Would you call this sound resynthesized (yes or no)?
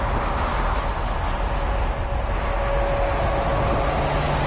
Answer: no